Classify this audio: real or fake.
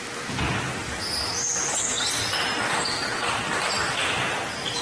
real